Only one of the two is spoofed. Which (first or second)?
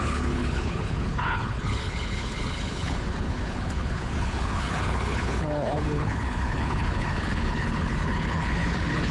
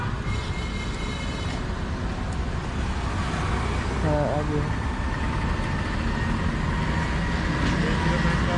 first